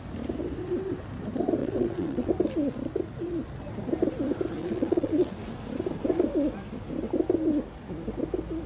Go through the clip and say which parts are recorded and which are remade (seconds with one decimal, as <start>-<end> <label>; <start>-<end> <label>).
0.0-1.6 recorded; 1.6-2.3 remade; 2.3-4.6 recorded; 4.6-5.4 remade; 5.4-8.7 recorded